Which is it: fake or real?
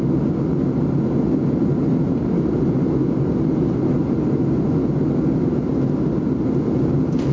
real